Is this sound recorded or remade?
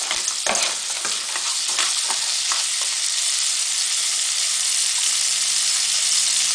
recorded